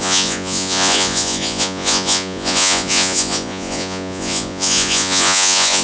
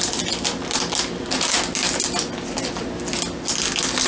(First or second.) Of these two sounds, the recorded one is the second